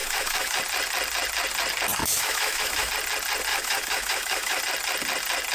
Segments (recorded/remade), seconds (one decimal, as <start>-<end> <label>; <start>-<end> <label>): 0.0-0.6 remade; 0.6-2.0 recorded; 2.0-2.9 remade; 2.9-3.5 recorded; 3.5-4.6 remade; 4.6-5.5 recorded